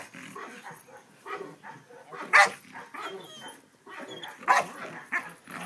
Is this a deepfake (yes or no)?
no